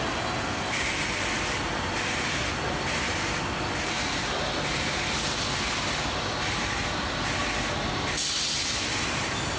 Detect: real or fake real